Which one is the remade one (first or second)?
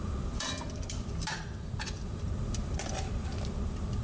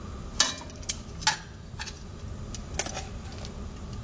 first